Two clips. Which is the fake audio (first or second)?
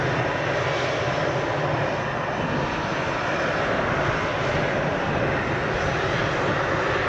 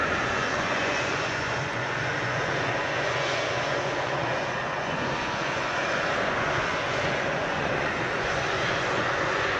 second